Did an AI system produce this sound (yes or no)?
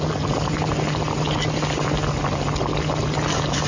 no